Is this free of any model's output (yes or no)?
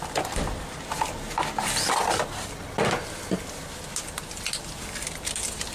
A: yes